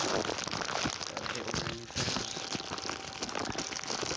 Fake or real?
real